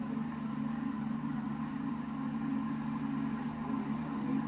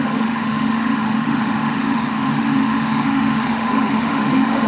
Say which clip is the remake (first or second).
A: second